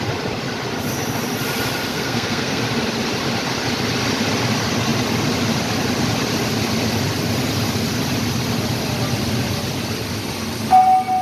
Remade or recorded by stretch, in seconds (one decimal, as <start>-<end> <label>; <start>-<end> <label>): 0.0-1.9 recorded; 1.9-2.6 remade; 2.6-11.2 recorded